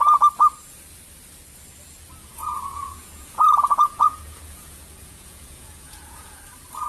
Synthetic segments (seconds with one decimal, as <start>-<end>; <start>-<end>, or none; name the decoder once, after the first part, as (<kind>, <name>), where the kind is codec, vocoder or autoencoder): 2.3-6.4 (vocoder, Vocos)